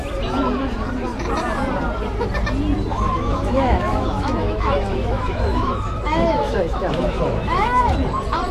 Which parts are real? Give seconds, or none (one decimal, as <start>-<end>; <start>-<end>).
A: 0.0-2.9; 7.8-8.5